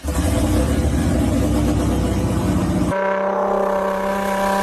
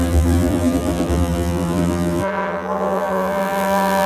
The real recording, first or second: first